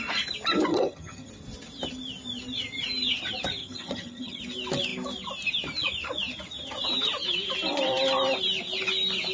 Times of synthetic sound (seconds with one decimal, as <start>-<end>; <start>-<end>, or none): 0.7-1.3; 3.6-4.4